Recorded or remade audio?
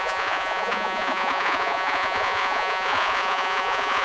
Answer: remade